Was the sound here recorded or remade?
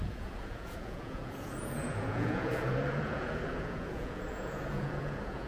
remade